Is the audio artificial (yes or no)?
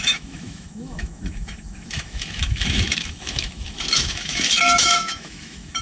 yes